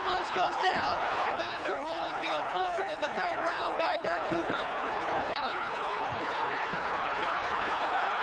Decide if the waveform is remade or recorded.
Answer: remade